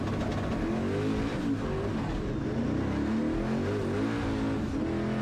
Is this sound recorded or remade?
recorded